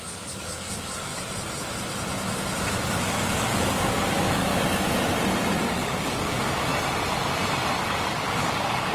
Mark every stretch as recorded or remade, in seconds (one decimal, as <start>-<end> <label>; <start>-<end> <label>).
0.0-1.1 remade; 1.1-2.6 recorded; 2.6-4.5 remade; 4.5-5.6 recorded; 5.6-6.7 remade; 6.7-7.8 recorded; 7.8-8.9 remade